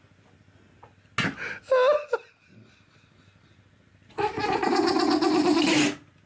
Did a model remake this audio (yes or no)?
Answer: no